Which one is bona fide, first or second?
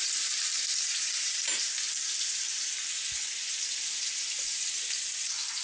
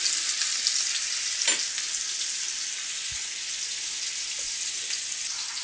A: second